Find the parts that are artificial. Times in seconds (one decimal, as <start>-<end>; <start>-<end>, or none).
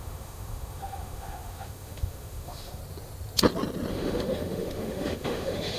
0.0-2.8; 3.9-5.8